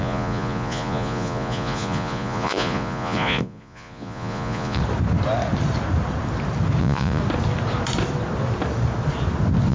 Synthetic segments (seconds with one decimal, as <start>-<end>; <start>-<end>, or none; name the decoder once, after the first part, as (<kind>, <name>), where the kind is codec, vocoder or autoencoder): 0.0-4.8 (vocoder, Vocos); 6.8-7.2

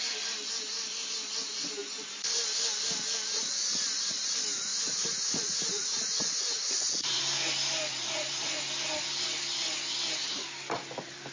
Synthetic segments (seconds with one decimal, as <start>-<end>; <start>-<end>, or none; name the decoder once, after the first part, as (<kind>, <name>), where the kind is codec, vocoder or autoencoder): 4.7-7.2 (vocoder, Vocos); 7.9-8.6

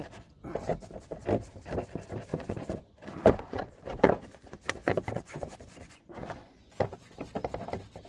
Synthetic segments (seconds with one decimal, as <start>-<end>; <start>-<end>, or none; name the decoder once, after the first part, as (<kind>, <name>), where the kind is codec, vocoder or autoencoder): 2.3-7.2 (vocoder, Vocos)

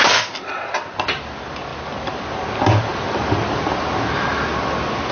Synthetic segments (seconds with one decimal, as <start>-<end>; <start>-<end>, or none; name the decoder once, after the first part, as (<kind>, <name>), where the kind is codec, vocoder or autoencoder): none

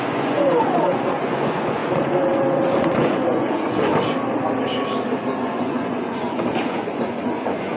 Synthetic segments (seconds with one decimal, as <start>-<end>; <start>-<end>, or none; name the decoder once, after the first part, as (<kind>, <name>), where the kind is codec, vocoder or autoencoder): 0.0-3.9 (vocoder, Vocos); 5.4-7.8